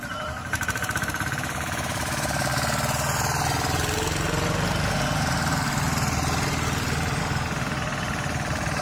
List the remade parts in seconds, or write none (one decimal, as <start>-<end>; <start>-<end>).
0.0-2.5; 7.2-8.8